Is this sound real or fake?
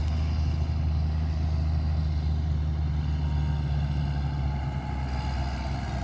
real